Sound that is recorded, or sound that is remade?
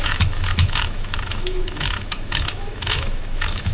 remade